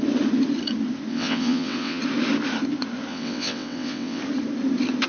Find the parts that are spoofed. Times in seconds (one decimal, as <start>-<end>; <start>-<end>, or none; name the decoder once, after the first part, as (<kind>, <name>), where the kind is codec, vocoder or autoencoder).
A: 1.1-2.0 (vocoder, WaveNeXt); 3.1-4.2